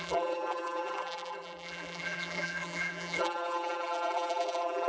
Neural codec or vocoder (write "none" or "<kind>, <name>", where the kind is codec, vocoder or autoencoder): vocoder, BigVGAN v2